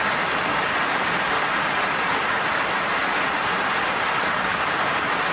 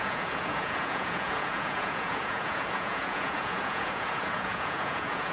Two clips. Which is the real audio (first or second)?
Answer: first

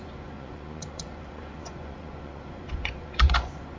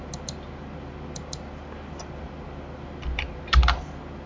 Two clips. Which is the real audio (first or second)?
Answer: second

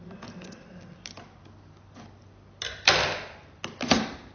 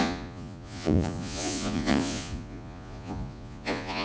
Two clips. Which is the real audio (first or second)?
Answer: first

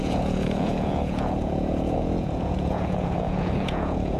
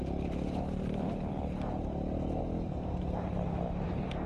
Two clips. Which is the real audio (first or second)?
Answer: second